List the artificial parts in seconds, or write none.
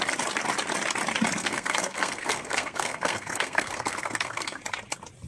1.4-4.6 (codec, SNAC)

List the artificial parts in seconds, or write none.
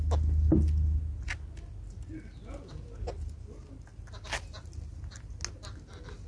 none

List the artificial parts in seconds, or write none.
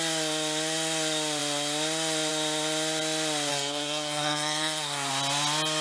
3.5-5.1 (codec, SNAC)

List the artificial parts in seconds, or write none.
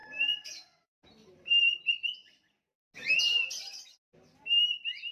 none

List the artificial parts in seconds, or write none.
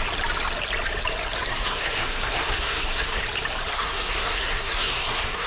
1.5-3.2 (codec, SNAC); 3.7-5.5